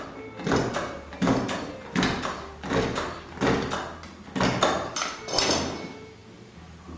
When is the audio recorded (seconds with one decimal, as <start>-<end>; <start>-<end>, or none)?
0.0-7.0